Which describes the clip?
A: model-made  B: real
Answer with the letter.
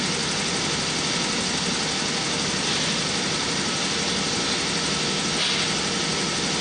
B